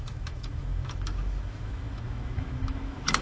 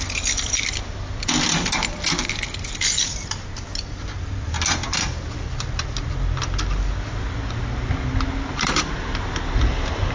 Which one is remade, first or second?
first